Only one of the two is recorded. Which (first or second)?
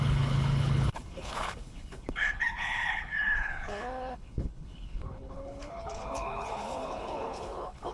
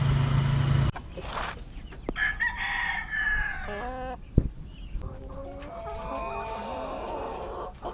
second